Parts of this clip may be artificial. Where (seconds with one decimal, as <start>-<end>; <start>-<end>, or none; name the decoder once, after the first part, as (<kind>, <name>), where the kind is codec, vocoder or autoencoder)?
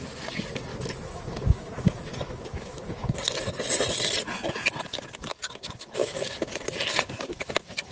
0.7-3.1 (autoencoder, DAC-VAE); 6.0-6.5